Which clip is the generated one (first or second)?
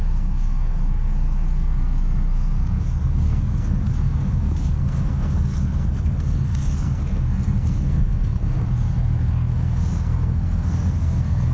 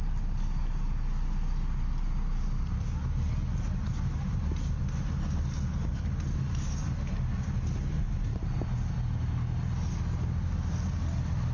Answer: first